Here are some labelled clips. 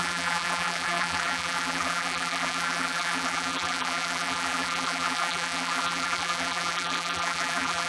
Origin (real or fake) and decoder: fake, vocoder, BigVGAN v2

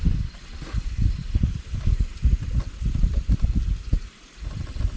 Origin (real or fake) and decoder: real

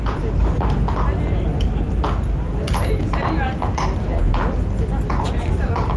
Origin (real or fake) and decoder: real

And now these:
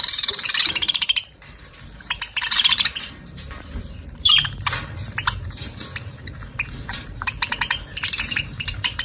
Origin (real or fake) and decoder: fake, vocoder, BigVGAN v2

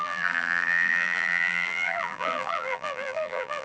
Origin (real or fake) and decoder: fake, vocoder, BigVGAN v2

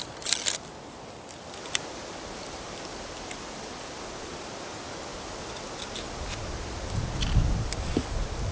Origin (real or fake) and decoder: real